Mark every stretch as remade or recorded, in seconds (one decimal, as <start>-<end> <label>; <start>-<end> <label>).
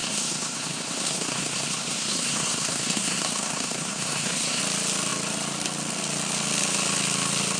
0.0-4.6 remade; 4.6-7.6 recorded